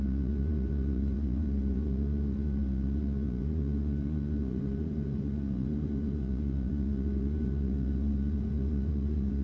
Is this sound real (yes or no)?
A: no